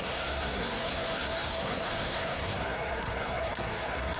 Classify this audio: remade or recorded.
remade